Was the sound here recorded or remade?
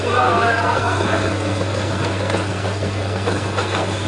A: remade